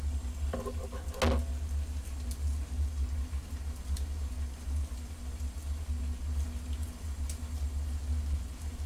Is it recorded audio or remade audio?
recorded